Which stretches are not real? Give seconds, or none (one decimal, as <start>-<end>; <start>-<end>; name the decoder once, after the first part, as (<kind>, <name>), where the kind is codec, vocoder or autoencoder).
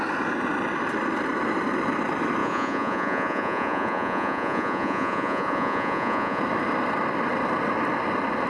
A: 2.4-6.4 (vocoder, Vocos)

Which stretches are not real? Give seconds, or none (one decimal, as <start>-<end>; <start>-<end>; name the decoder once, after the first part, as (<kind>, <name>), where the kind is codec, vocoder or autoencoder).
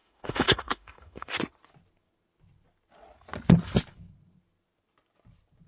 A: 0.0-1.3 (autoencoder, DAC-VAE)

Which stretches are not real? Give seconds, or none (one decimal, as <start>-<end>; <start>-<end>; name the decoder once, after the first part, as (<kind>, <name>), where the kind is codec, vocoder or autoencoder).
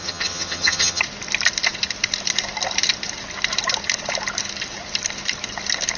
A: 0.0-1.0 (vocoder, HiFi-GAN)